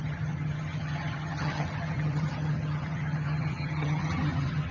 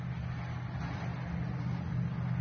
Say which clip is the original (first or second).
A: second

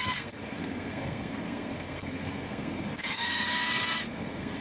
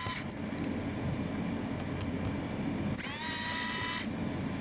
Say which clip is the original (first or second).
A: second